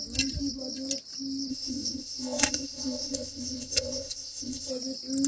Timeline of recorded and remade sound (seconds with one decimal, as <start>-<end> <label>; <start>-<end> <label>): 0.0-1.5 recorded; 1.5-4.7 remade; 4.7-5.3 recorded